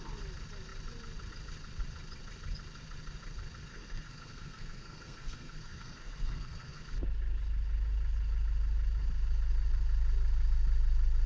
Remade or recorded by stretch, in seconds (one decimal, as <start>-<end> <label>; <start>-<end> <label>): 0.0-3.7 recorded; 3.7-6.8 remade; 6.8-11.3 recorded